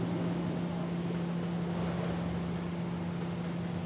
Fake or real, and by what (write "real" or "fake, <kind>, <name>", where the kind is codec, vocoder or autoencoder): real